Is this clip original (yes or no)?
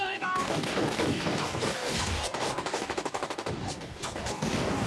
no